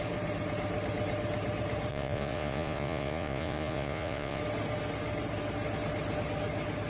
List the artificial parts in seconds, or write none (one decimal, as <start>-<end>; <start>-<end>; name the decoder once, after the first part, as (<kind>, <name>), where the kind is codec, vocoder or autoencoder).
1.9-4.4 (vocoder, Vocos)

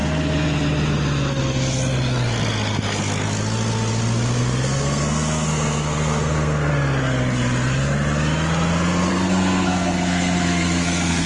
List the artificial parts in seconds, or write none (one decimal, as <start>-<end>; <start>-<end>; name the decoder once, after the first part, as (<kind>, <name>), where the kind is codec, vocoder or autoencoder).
4.4-6.7 (codec, SNAC); 9.1-11.3

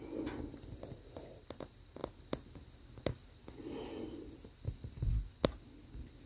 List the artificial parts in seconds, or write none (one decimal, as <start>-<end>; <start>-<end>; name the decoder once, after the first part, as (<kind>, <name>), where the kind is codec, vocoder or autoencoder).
none

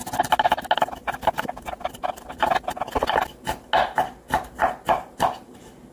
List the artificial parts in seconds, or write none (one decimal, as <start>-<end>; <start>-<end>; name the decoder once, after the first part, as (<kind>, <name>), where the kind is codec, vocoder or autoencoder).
none

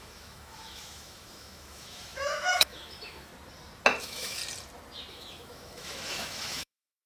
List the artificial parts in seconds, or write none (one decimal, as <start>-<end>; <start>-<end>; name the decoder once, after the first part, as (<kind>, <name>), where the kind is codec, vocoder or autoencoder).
0.0-3.3 (autoencoder, DAC-VAE); 4.0-4.4; 5.1-7.1

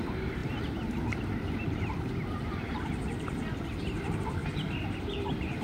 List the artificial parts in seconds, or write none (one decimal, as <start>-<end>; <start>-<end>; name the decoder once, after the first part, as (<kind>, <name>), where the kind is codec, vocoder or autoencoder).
0.0-4.4 (vocoder, BigVGAN v2); 5.0-5.6

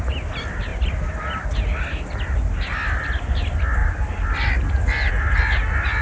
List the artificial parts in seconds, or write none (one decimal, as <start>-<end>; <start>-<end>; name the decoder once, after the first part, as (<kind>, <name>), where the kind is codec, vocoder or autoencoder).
none

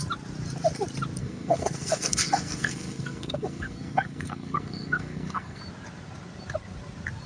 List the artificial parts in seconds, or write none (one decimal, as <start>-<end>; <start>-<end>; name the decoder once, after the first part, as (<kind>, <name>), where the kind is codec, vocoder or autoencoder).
1.2-5.6 (codec, SNAC)